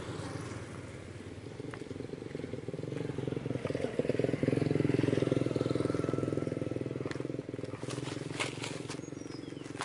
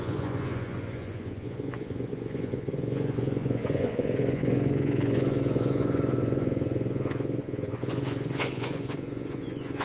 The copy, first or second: second